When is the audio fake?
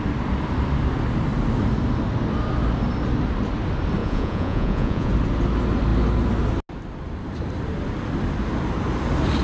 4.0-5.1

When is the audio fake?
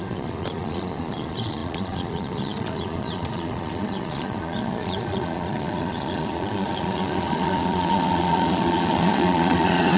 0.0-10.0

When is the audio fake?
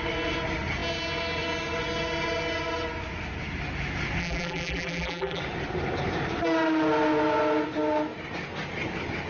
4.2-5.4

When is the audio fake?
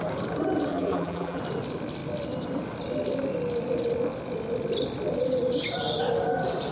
0.7-1.4